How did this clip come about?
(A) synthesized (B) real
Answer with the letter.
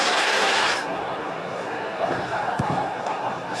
A